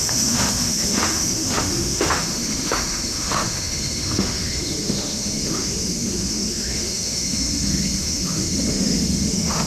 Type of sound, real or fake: fake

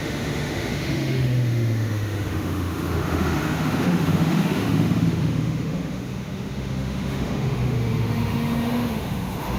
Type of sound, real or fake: fake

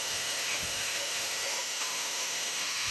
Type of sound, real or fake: fake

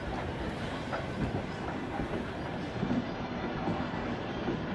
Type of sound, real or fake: real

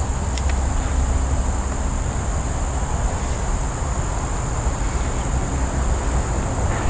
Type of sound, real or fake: real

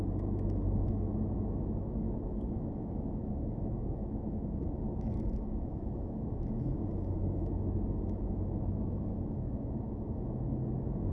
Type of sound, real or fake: fake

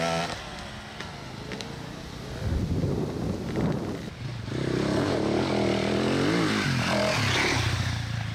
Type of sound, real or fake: real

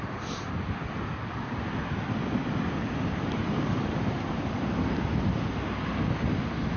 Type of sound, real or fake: real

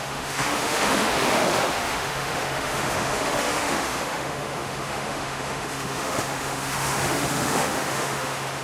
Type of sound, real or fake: fake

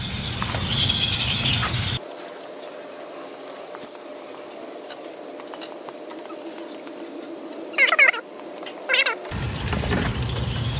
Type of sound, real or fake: real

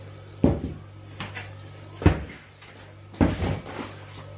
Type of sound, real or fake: real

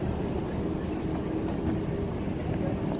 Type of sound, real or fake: real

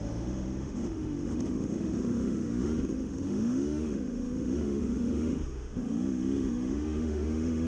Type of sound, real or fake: fake